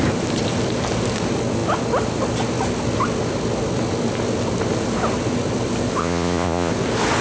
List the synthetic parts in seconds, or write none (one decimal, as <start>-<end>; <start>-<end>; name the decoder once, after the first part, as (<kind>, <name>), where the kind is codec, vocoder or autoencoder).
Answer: 6.0-6.7 (vocoder, Vocos)